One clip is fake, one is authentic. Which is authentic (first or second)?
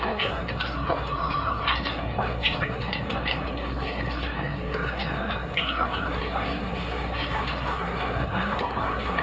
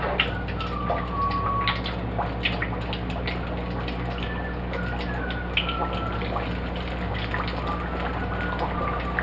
second